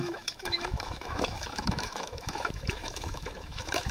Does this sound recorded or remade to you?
remade